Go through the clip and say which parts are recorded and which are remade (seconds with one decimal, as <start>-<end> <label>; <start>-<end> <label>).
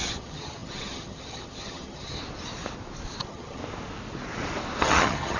0.0-2.2 remade; 2.2-3.2 recorded; 3.2-3.6 remade; 3.6-4.8 recorded; 4.8-5.4 remade